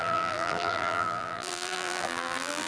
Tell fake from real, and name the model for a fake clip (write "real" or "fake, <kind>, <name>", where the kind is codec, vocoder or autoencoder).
fake, vocoder, BigVGAN v2